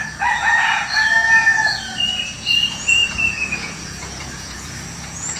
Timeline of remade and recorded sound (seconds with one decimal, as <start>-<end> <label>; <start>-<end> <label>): 0.0-5.4 remade